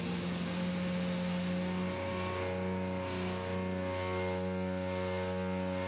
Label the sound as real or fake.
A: real